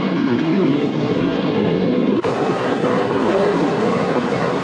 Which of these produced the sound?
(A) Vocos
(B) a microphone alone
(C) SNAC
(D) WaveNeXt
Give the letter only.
C